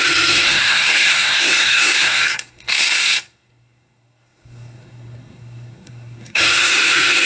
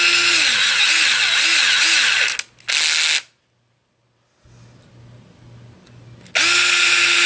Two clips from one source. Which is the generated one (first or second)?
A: first